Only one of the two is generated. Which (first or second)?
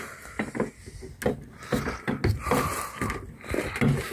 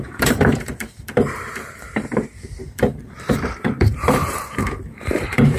second